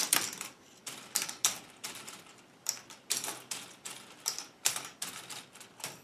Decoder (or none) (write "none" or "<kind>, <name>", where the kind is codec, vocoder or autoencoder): none